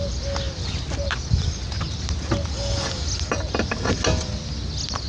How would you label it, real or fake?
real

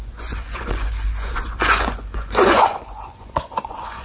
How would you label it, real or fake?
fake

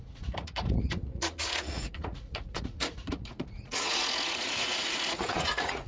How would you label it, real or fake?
fake